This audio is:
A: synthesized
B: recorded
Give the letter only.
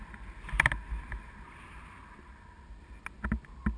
B